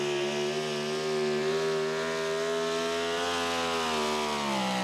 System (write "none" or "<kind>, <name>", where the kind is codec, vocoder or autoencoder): none